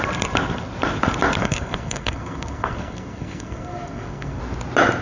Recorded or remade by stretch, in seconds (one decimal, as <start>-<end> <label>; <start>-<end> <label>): 0.0-1.4 recorded; 1.4-4.4 remade; 4.4-5.0 recorded